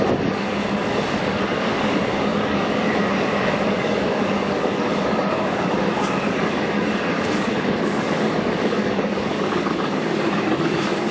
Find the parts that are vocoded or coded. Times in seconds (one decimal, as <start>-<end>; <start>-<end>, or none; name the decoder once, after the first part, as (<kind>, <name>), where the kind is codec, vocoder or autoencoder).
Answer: 0.0-11.1 (codec, DAC)